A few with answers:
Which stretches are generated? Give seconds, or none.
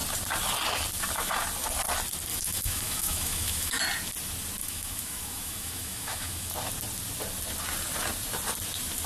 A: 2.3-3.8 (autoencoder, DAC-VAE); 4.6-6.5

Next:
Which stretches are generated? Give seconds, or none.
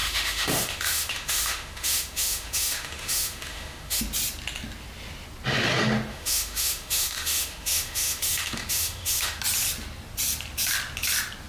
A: 0.0-4.0 (autoencoder, DAC-VAE); 6.1-9.4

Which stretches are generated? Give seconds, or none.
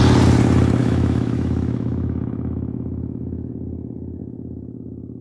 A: 0.8-3.5 (autoencoder, DAC-VAE)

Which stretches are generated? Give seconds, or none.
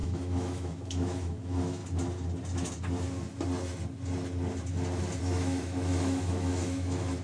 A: 0.0-1.8 (autoencoder, DAC-VAE); 5.2-7.2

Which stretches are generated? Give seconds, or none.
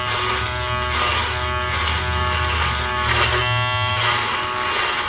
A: none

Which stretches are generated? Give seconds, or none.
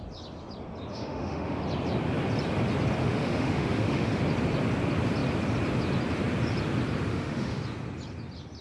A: 0.9-1.6 (autoencoder, DAC-VAE); 3.0-4.2; 7.1-7.6